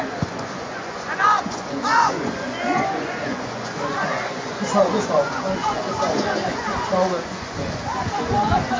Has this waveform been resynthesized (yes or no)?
yes